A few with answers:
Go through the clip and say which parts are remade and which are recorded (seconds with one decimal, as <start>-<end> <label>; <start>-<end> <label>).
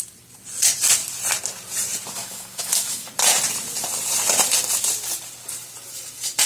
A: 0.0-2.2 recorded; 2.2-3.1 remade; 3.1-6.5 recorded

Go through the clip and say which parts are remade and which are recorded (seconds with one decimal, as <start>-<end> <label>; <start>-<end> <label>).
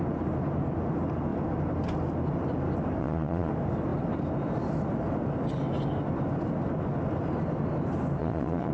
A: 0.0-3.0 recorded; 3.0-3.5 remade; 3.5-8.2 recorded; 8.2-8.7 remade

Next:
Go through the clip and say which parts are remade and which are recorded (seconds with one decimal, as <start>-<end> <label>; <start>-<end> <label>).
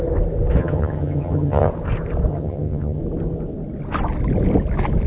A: 0.0-0.6 recorded; 0.6-1.7 remade; 1.7-2.3 recorded; 2.3-3.0 remade; 3.0-5.1 recorded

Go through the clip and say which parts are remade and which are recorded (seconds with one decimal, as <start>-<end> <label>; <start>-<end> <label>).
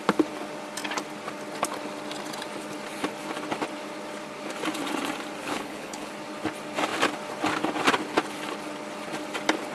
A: 0.0-5.4 recorded; 5.4-6.1 remade; 6.1-9.7 recorded